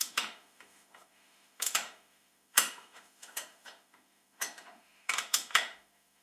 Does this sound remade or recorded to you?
remade